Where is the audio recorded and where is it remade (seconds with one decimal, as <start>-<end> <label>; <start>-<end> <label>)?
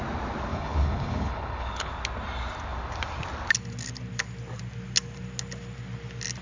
0.0-0.5 recorded; 0.5-1.9 remade; 1.9-6.4 recorded